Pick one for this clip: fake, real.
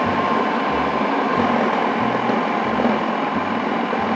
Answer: real